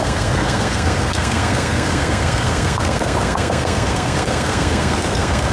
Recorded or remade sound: remade